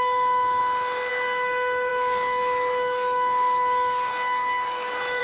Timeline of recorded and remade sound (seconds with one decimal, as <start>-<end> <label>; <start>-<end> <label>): 0.0-0.6 remade; 0.6-1.1 recorded; 1.1-5.2 remade